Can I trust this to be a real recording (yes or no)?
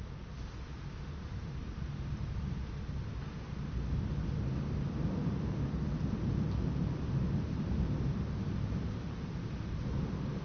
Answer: no